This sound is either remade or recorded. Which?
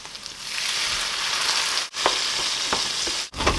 recorded